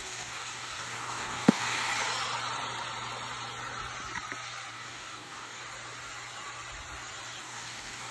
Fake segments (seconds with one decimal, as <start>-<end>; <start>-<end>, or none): 0.0-1.9; 4.7-5.6; 7.4-8.1